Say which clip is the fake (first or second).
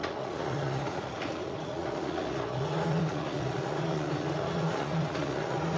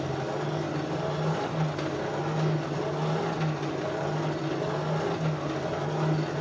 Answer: first